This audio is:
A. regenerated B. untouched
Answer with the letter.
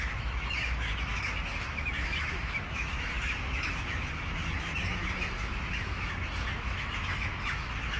A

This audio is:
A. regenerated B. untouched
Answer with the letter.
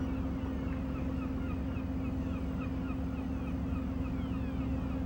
B